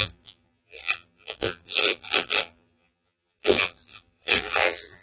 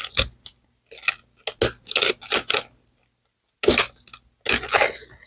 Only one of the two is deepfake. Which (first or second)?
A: first